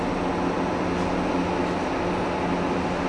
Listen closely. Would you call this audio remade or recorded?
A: recorded